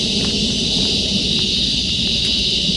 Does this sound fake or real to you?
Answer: real